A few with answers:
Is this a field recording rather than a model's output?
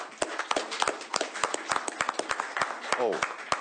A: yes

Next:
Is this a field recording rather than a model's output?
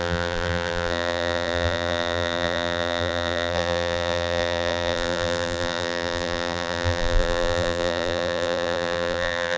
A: no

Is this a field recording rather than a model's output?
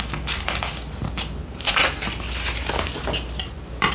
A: yes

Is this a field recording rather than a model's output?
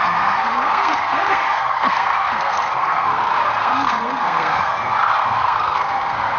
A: no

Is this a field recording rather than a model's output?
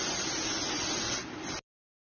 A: yes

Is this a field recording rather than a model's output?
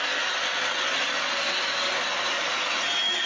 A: yes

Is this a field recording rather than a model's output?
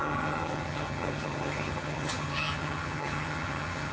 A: no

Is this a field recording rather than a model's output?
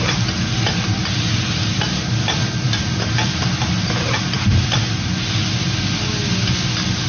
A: yes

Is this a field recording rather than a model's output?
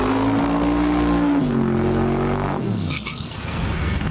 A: no